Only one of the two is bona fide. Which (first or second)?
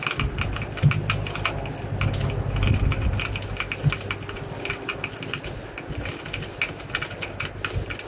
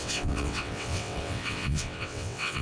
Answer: first